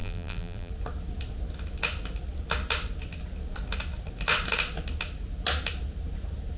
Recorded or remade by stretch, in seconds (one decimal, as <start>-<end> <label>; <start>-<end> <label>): 0.0-0.7 remade; 0.7-6.6 recorded